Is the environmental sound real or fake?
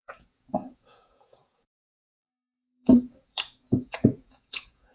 fake